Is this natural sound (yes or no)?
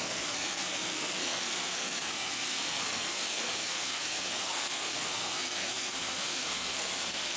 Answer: no